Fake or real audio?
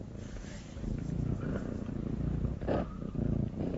real